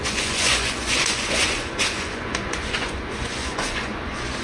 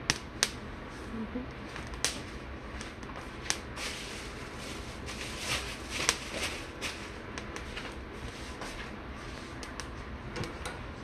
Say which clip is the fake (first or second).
first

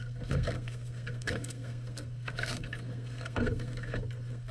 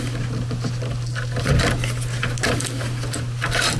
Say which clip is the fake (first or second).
first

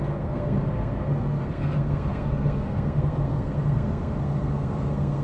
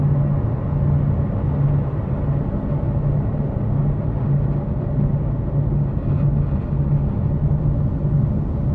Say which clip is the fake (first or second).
first